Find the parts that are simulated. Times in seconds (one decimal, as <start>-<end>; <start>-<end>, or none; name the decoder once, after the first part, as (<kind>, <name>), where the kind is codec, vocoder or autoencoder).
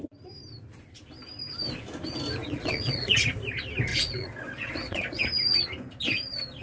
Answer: 2.4-3.1 (vocoder, Vocos); 3.9-5.2